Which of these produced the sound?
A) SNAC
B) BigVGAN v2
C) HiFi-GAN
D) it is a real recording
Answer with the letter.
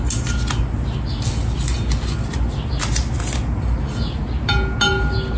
D